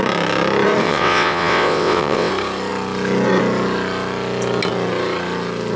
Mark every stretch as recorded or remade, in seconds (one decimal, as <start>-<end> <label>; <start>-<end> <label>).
0.0-0.8 recorded; 0.8-2.3 remade; 2.3-5.8 recorded